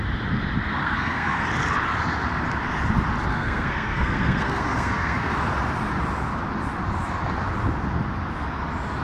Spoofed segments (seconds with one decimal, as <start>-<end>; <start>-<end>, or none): 0.8-1.4; 3.3-5.3